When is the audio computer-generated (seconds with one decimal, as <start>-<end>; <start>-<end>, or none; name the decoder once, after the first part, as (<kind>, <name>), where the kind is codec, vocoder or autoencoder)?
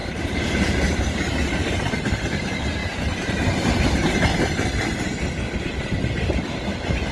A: 0.0-1.1 (vocoder, BigVGAN v2); 2.8-4.4